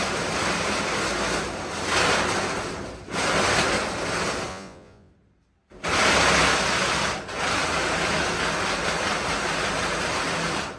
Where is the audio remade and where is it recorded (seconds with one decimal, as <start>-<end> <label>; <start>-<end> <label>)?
0.0-4.5 recorded; 4.5-5.1 remade; 5.1-10.8 recorded